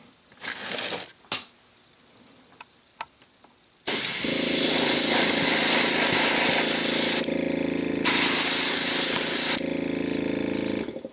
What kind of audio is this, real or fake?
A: real